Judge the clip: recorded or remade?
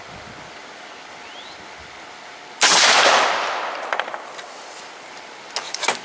recorded